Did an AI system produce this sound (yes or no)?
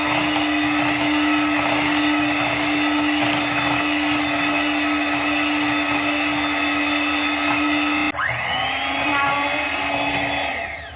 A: no